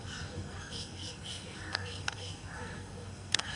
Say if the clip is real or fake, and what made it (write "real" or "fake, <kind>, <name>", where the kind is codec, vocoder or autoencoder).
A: fake, codec, SNAC